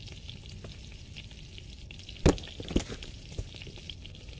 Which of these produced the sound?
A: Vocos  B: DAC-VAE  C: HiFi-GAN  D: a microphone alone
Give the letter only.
D